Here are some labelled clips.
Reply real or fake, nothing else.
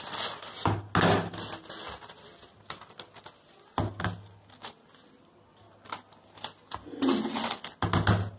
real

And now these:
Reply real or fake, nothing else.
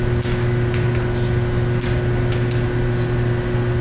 real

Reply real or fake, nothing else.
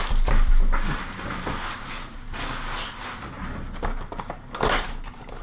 real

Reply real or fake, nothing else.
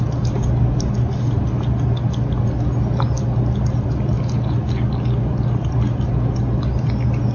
real